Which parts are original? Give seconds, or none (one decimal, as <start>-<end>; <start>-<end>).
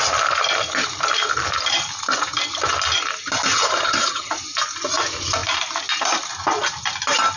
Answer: 0.0-3.5; 4.3-7.4